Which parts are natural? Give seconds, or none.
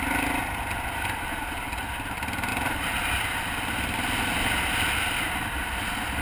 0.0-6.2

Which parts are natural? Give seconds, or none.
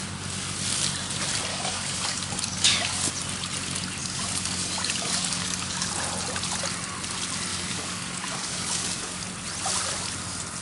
0.0-1.5; 3.1-4.0; 5.9-7.5; 9.2-10.6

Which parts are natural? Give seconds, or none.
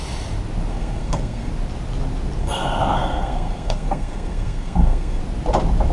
0.0-0.7; 1.5-2.4; 5.2-5.9